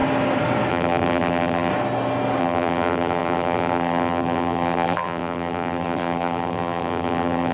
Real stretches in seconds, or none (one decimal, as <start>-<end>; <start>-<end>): 0.0-0.7; 1.7-2.4